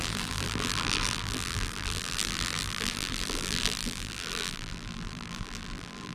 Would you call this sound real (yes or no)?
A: no